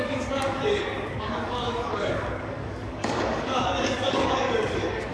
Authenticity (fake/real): fake